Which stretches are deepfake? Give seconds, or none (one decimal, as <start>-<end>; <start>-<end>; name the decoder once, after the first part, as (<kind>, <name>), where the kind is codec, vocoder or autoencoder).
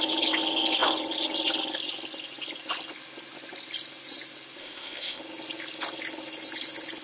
4.6-5.2 (codec, ZipCodec)